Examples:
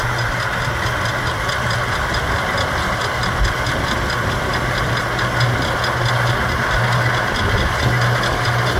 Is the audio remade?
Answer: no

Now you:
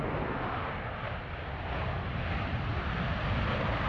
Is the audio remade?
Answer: no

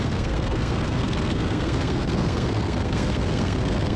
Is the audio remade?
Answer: yes